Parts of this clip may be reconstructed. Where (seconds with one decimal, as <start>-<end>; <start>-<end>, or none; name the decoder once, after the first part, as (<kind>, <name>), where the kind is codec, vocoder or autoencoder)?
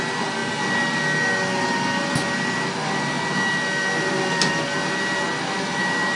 none